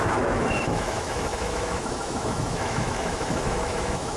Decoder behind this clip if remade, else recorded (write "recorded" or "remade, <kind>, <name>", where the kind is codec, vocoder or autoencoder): remade, autoencoder, DAC-VAE